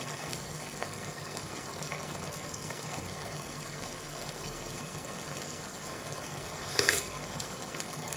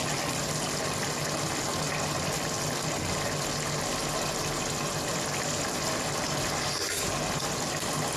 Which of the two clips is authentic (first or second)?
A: second